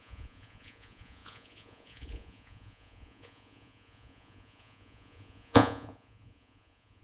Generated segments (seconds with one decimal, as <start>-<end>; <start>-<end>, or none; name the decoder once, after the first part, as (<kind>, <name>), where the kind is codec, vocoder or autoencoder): 0.0-7.0 (vocoder, Vocos)